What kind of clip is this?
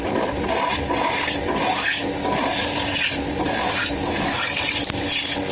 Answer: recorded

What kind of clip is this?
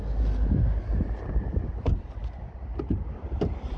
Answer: recorded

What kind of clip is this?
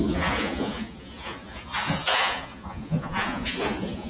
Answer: remade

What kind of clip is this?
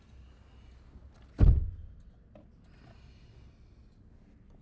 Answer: recorded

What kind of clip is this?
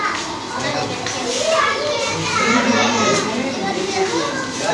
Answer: recorded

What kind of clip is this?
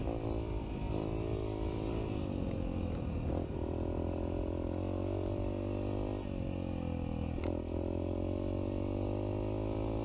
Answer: recorded